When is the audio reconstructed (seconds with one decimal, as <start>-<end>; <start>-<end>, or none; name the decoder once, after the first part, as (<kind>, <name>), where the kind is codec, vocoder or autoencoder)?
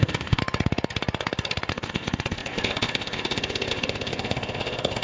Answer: 0.0-0.4 (codec, ZipCodec); 1.7-5.0